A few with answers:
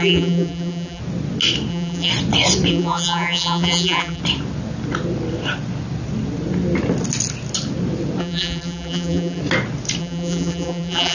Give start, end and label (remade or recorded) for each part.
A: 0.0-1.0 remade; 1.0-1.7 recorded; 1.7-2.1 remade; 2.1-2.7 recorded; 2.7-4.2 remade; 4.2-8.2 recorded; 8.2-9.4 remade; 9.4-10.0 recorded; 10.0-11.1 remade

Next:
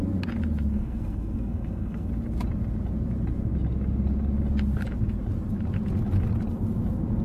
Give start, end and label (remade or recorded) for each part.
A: 0.0-0.7 recorded; 0.7-2.1 remade; 2.1-7.2 recorded

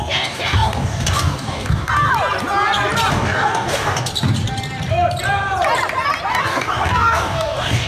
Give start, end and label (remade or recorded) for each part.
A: 0.0-2.1 remade; 2.1-3.1 recorded; 3.1-4.1 remade; 4.1-6.3 recorded; 6.3-7.9 remade

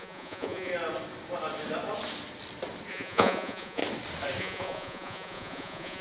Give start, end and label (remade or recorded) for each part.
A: 0.0-0.7 remade; 0.7-2.9 recorded; 2.9-3.8 remade; 3.8-4.4 recorded; 4.4-6.0 remade

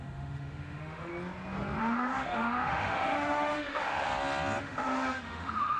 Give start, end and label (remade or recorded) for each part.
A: 0.0-1.1 remade; 1.1-1.8 recorded; 1.8-4.1 remade; 4.1-4.6 recorded; 4.6-5.8 remade